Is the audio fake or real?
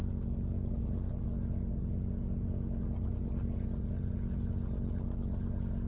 real